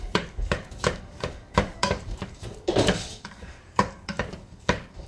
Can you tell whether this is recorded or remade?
remade